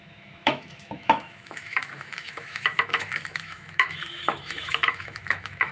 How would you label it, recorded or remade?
remade